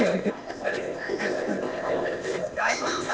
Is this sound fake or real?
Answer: fake